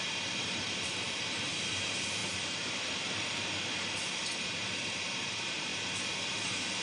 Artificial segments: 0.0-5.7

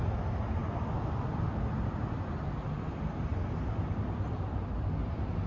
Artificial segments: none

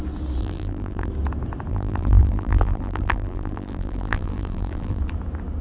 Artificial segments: 0.4-1.1; 1.7-5.0

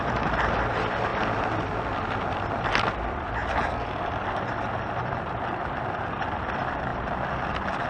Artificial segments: 0.0-1.1; 2.0-3.4; 4.1-7.9

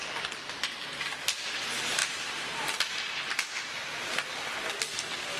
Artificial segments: none

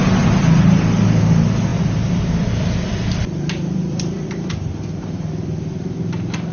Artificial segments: 1.7-5.6

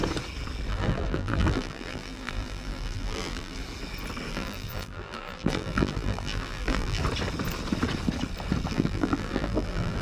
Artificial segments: 0.7-3.6; 4.3-7.0; 8.7-10.0